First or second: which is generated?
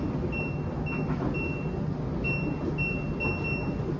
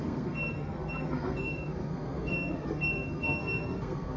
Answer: second